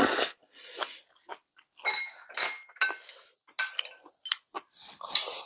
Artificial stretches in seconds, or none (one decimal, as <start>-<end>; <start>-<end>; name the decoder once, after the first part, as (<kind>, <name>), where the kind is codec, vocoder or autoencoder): none